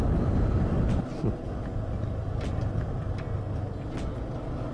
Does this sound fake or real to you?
real